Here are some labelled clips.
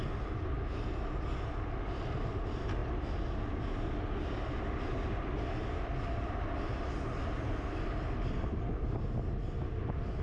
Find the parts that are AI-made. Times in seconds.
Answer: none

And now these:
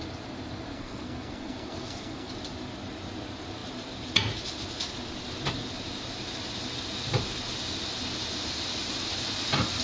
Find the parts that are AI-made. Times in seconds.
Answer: 0.7-2.3 (codec, SNAC)